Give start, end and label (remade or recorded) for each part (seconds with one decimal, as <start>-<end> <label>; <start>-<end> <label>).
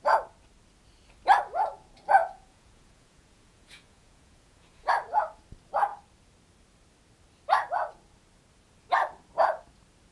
0.0-2.2 recorded; 2.2-4.9 remade; 4.9-10.1 recorded